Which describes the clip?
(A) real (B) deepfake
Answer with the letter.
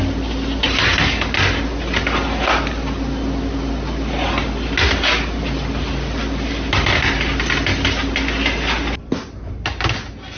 A